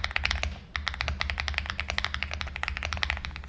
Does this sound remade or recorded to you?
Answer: recorded